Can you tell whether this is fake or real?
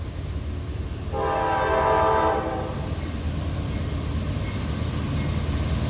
real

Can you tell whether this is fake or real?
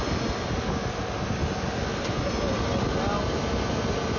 real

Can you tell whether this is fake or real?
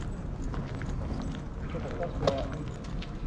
real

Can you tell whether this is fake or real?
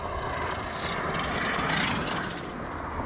real